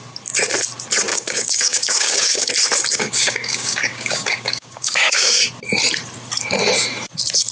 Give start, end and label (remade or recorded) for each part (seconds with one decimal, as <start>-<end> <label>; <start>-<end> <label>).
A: 0.0-1.1 recorded; 1.1-2.5 remade; 2.5-2.9 recorded; 2.9-5.4 remade; 5.4-7.5 recorded